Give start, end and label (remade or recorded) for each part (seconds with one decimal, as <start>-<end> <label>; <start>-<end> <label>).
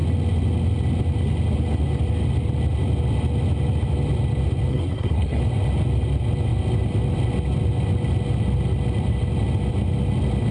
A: 0.0-4.7 recorded; 4.7-5.4 remade; 5.4-10.5 recorded